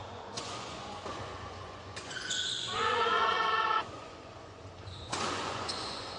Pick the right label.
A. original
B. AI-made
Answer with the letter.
B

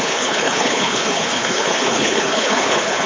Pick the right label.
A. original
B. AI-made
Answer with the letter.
B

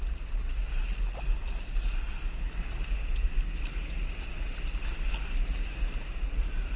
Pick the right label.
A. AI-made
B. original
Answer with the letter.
B